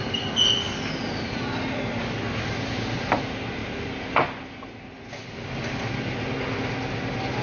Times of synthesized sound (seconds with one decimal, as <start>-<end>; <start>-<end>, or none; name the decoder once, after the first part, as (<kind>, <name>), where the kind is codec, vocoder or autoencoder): none